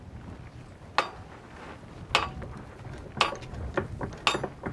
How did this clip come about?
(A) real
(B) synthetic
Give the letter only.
A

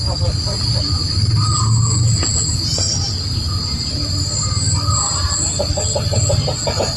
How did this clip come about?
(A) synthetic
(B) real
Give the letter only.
B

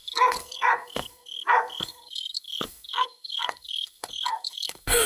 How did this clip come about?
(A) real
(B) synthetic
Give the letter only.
B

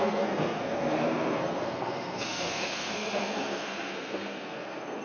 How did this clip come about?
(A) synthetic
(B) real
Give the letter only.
A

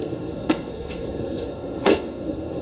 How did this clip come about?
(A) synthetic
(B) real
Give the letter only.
A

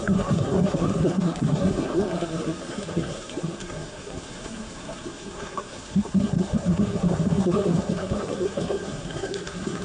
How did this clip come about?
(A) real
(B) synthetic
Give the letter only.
B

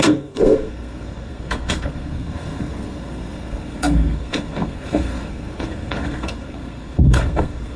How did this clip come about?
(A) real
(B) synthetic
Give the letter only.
B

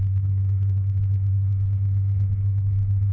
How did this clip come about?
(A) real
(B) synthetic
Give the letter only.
B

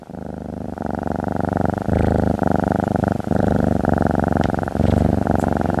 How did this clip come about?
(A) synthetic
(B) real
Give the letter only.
B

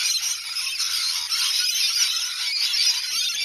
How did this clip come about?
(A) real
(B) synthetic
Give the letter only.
A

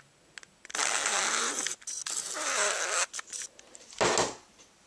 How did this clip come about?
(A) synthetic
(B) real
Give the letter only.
B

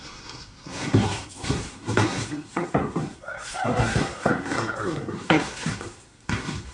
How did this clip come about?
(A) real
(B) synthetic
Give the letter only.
B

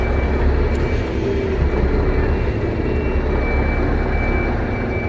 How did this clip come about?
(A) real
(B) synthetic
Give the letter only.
A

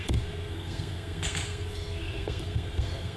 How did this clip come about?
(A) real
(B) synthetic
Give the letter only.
B